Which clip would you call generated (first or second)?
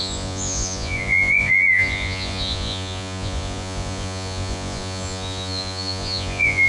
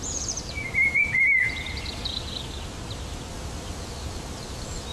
first